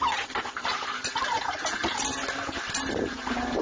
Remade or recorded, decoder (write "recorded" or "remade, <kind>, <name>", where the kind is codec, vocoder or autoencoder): recorded